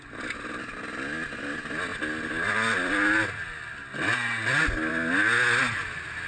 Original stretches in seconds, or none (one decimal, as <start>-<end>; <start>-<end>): 0.0-6.3